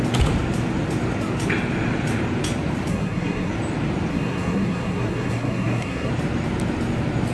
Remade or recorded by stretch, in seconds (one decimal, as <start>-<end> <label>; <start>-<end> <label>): 0.0-2.9 recorded; 2.9-3.5 remade; 3.5-4.1 recorded; 4.1-6.1 remade; 6.1-7.3 recorded

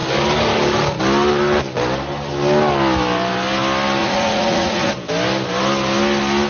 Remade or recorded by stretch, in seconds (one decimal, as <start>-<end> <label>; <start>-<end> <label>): 0.0-4.0 recorded; 4.0-4.9 remade; 4.9-6.5 recorded